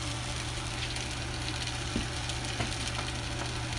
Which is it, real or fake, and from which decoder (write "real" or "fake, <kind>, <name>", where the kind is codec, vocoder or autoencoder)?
real